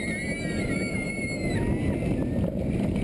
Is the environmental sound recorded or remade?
recorded